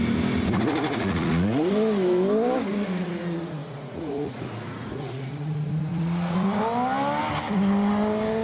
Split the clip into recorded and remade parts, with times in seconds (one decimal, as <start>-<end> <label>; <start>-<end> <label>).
0.0-1.0 recorded; 1.0-1.7 remade; 1.7-2.7 recorded; 2.7-6.6 remade; 6.6-8.4 recorded